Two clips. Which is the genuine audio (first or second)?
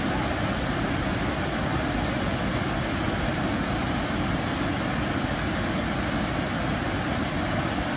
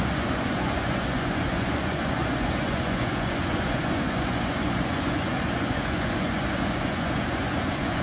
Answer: first